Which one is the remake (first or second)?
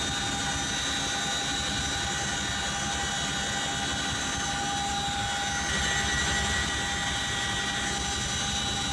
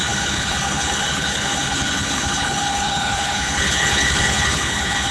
second